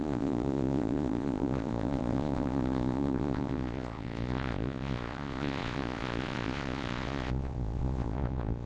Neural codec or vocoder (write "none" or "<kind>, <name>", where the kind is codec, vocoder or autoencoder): vocoder, Vocos